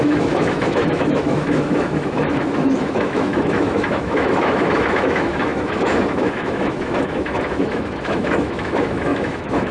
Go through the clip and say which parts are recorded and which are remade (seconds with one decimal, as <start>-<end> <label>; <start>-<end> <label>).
0.0-9.7 remade